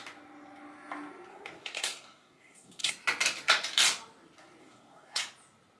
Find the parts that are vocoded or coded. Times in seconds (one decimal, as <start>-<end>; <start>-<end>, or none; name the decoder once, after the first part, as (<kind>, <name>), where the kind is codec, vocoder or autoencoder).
1.3-2.9 (codec, SNAC); 4.6-5.2